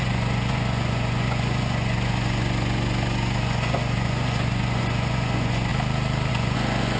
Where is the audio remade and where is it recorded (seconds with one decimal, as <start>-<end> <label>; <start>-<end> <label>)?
0.0-5.7 remade; 5.7-6.3 recorded; 6.3-7.0 remade